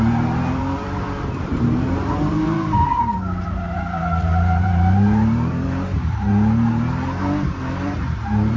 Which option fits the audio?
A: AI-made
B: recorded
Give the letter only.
A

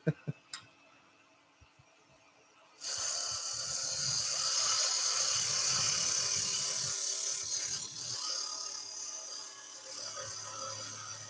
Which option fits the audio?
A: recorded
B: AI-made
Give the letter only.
A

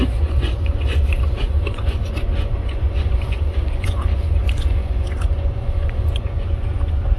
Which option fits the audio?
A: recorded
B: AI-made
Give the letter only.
B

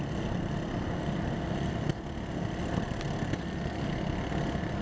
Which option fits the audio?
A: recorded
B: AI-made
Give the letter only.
A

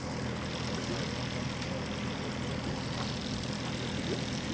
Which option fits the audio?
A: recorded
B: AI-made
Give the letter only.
A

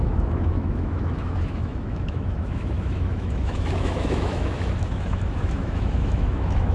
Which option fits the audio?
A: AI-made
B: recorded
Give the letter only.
A